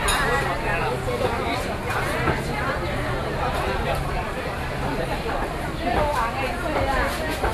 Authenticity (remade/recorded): recorded